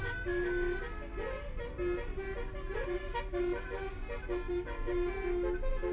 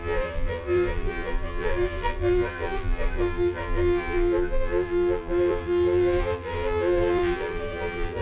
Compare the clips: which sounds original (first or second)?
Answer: first